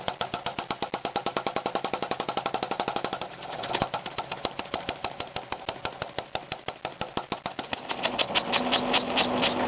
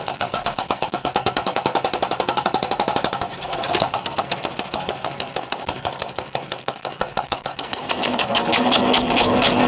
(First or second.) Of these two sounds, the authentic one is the first